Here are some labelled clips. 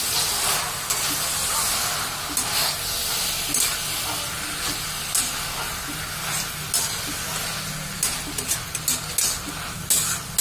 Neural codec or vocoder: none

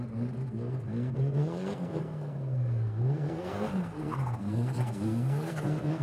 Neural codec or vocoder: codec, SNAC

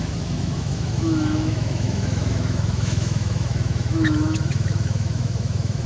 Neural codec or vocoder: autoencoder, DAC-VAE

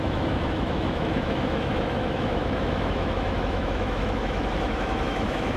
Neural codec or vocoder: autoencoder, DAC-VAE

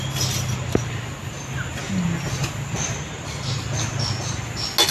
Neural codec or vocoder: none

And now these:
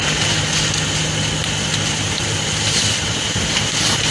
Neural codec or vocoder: none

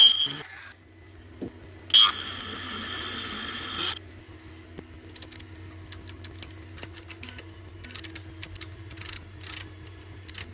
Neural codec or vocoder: none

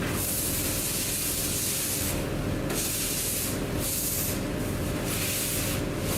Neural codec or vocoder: none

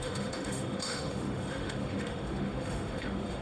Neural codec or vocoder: autoencoder, DAC-VAE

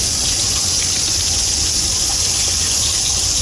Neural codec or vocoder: vocoder, Vocos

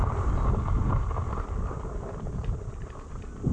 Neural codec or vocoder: none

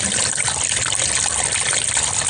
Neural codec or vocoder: none